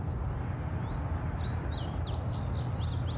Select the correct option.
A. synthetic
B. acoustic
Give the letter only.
B